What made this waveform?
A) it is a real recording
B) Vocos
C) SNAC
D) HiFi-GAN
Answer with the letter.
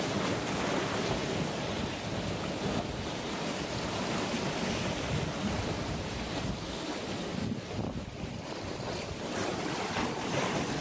A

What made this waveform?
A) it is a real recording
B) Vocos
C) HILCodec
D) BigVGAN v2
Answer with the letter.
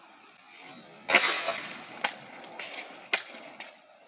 A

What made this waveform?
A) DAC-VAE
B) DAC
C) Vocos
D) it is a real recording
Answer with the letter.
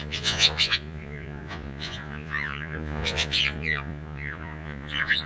C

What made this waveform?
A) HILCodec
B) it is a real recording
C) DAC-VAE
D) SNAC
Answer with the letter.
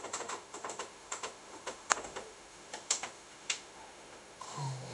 C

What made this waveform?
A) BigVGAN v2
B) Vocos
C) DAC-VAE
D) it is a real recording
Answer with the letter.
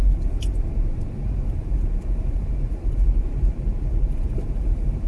A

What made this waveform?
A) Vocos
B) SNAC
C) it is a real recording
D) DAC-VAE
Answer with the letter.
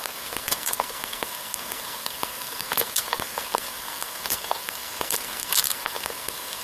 B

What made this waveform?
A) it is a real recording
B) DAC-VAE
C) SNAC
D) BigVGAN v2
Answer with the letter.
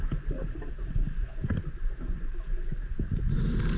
A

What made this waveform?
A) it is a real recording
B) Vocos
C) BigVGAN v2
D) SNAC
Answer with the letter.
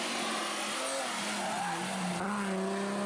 A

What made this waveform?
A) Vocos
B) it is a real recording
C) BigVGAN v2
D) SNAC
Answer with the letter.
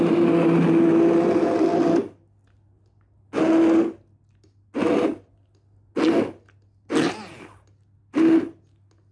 B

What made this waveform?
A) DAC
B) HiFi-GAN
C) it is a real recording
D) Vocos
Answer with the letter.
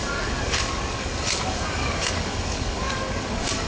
A